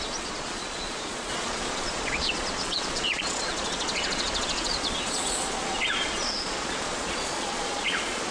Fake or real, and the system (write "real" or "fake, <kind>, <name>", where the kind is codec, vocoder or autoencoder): fake, vocoder, Vocos